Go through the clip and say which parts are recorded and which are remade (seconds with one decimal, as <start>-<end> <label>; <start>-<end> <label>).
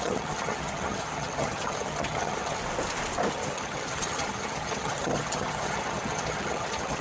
0.0-2.6 remade; 2.6-3.3 recorded; 3.3-7.0 remade